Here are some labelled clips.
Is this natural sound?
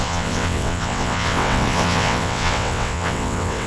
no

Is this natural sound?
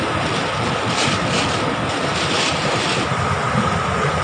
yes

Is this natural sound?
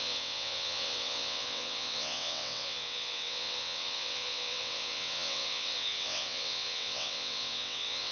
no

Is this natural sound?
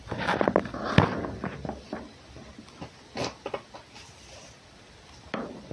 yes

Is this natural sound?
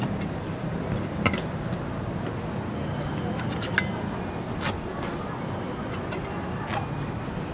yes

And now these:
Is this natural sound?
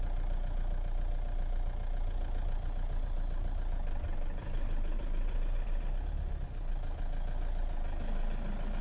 yes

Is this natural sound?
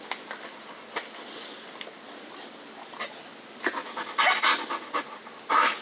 yes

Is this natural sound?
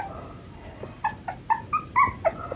yes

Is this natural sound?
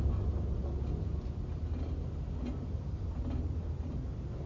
yes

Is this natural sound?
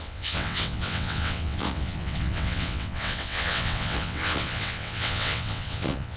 no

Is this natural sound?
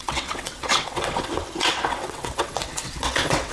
no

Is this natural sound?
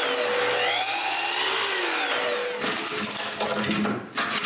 yes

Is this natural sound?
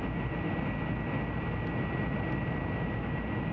yes